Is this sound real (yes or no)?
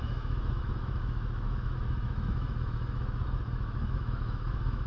no